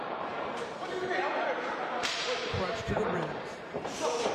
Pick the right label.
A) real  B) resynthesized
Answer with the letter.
B